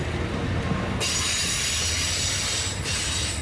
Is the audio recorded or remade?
recorded